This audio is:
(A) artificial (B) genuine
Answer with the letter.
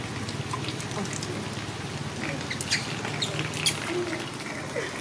B